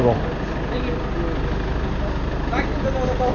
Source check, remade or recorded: recorded